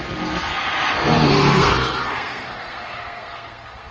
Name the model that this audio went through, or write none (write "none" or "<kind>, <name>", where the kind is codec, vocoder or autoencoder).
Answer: codec, SNAC